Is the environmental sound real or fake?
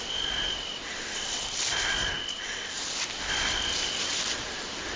real